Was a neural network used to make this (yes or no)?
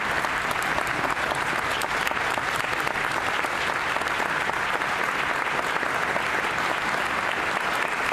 no